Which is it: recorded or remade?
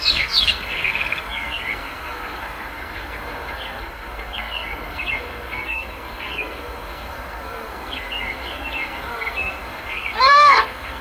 remade